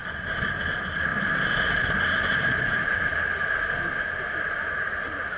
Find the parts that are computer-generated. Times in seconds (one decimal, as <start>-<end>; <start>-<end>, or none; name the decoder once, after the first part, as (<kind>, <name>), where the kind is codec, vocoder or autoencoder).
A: 0.0-0.6 (vocoder, BigVGAN v2); 1.1-2.1